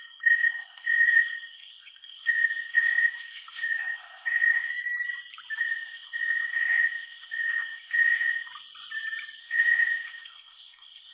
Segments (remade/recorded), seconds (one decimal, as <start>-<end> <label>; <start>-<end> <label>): 0.0-4.7 remade; 4.7-5.6 recorded; 5.6-8.5 remade; 8.5-9.4 recorded; 9.4-11.1 remade